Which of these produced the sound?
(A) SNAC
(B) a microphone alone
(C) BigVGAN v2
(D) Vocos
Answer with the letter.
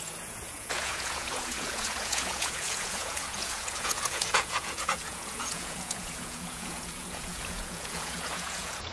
D